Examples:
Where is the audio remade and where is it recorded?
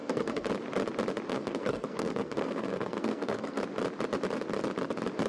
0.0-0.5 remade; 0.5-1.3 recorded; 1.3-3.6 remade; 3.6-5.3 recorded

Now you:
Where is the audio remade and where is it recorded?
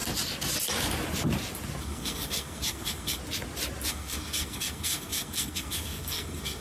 0.0-1.8 recorded; 1.8-3.2 remade; 3.2-3.9 recorded; 3.9-6.6 remade